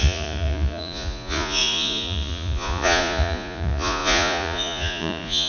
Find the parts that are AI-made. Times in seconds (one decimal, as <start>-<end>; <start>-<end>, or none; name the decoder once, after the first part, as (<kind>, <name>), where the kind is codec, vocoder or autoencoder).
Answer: 0.0-5.5 (vocoder, Vocos)